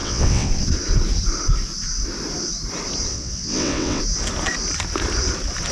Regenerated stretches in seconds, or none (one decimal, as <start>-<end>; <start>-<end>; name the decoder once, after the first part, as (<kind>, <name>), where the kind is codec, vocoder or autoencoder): 0.0-0.5 (vocoder, WaveNeXt); 3.1-4.0